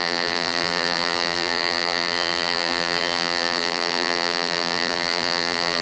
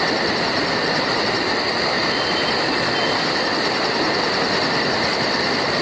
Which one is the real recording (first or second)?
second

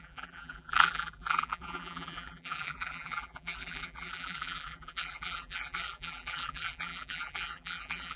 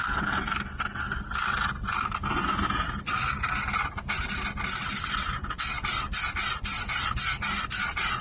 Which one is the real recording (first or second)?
second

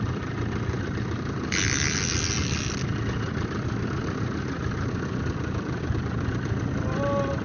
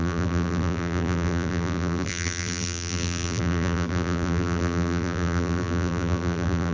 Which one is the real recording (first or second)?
first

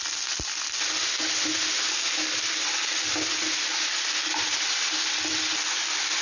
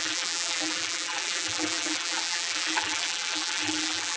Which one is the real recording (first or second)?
first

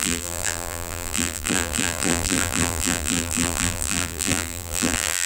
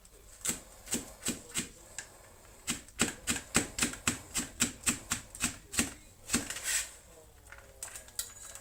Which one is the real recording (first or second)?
second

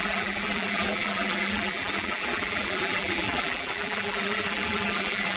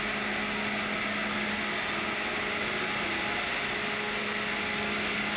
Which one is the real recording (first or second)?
second